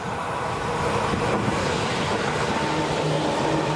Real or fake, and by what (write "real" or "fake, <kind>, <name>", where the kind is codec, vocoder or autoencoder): real